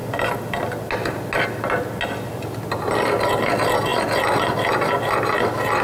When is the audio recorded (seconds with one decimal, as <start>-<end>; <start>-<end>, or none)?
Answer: 0.0-5.8